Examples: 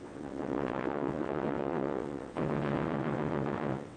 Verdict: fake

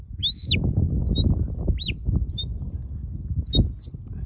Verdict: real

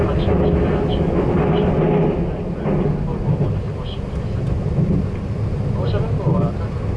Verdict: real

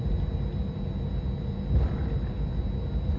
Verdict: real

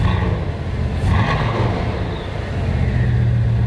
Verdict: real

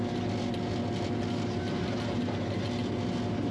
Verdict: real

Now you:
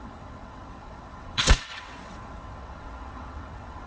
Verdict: fake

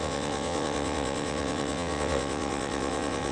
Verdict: fake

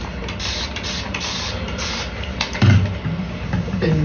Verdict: real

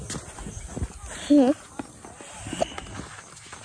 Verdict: real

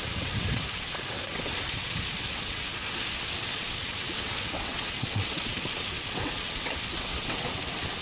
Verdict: fake